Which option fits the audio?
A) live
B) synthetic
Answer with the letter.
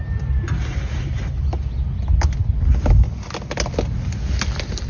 A